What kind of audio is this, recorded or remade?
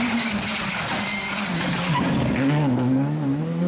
recorded